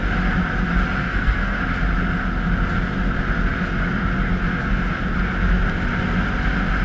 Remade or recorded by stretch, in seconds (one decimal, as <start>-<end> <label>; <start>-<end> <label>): 0.0-1.0 recorded; 1.0-1.6 remade; 1.6-6.8 recorded